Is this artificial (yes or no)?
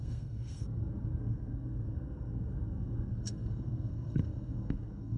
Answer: yes